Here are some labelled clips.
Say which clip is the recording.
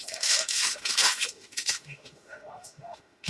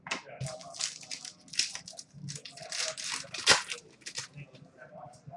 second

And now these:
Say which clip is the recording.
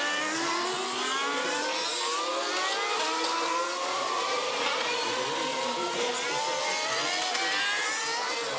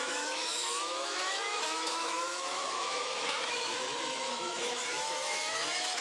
first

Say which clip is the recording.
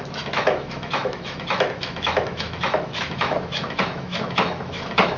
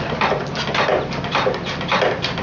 second